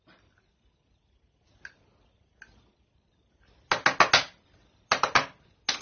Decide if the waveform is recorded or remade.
recorded